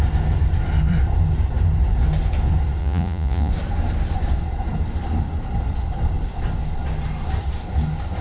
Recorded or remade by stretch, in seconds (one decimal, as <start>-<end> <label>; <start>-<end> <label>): 0.0-2.8 recorded; 2.8-3.5 remade; 3.5-8.2 recorded